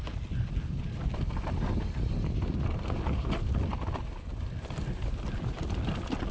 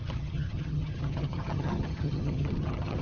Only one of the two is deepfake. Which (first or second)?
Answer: second